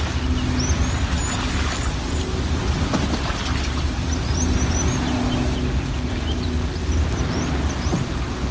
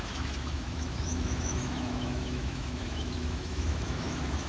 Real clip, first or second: first